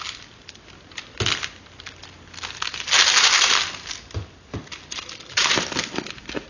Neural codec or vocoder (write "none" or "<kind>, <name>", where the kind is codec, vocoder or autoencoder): none